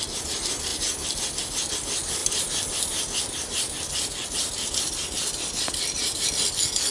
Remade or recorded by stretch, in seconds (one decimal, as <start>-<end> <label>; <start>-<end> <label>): 0.0-2.2 recorded; 2.2-6.3 remade; 6.3-6.9 recorded